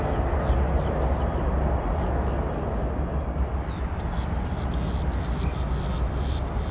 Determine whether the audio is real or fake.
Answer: real